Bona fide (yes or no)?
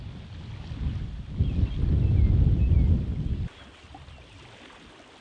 yes